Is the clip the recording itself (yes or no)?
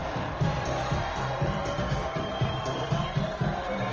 no